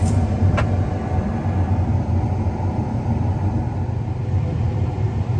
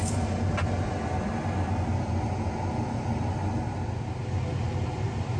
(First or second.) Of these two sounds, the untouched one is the second